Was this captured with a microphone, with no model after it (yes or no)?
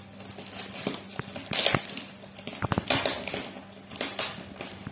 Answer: yes